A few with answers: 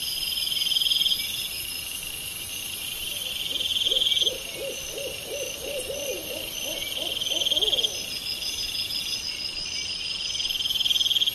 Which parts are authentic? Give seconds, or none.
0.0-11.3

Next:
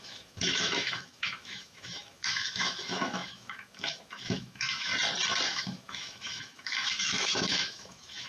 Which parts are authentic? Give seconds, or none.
4.9-5.5

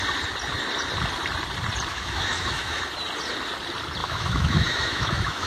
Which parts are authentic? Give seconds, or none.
0.0-1.9; 2.8-4.0

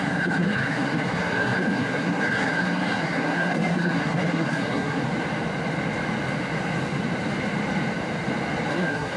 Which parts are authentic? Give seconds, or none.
5.0-8.7

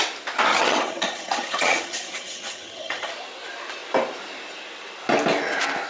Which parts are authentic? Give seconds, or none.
0.0-0.5; 3.1-5.9

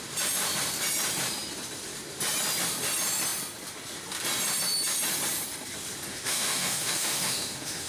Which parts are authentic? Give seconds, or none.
0.0-6.1

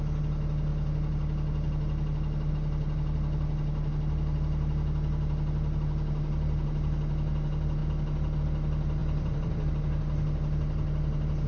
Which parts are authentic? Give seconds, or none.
0.0-9.0; 9.7-11.5

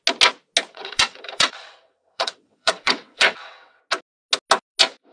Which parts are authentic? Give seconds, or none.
0.0-0.7; 3.8-5.1